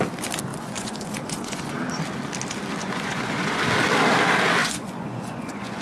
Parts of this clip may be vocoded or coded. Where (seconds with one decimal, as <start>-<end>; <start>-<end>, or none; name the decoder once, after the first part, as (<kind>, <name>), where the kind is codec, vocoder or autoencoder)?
0.5-1.8 (vocoder, Vocos); 2.8-3.6; 4.6-5.8